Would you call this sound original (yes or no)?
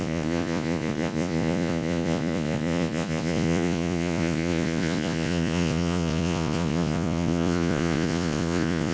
no